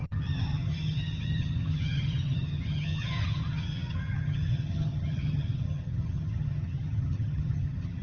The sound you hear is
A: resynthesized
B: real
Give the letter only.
A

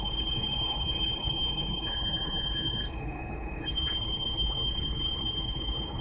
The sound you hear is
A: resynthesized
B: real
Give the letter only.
A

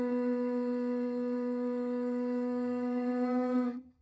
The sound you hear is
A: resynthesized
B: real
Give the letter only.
A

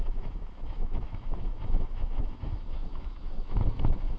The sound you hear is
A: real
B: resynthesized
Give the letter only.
B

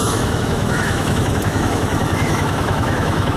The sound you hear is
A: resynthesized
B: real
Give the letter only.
A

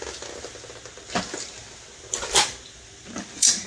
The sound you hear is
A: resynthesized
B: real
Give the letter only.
B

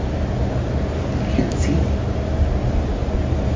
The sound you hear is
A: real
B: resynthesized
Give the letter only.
A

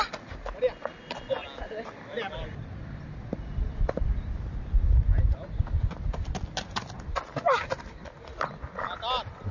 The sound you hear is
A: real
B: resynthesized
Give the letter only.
A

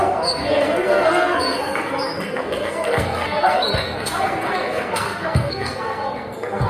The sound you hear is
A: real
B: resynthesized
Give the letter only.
B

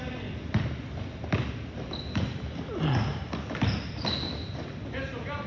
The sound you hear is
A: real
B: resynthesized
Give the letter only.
A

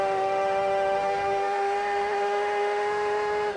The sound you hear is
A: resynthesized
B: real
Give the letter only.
A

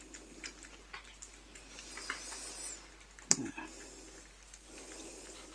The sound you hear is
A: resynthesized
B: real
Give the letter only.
B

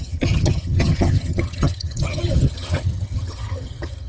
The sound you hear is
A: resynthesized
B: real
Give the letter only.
A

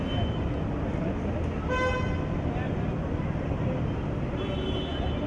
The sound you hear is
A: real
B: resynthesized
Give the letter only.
A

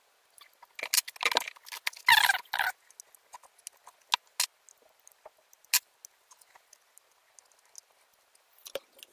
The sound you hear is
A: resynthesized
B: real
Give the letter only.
B